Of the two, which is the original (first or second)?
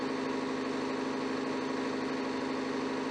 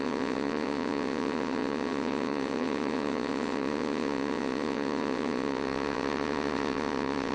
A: first